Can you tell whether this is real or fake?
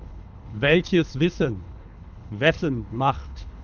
fake